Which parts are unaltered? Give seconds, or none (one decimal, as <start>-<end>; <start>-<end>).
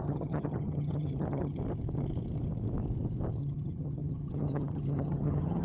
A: 1.6-3.4